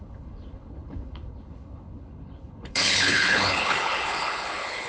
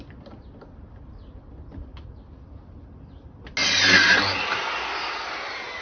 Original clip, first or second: second